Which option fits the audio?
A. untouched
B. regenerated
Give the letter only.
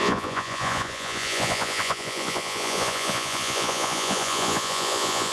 B